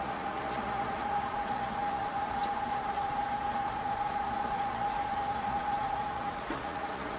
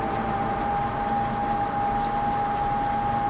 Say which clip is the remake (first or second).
first